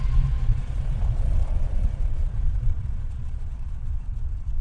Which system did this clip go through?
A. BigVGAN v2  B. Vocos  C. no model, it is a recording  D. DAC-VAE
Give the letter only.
B